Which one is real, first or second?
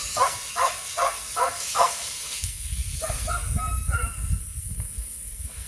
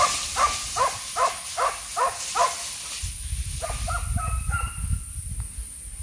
second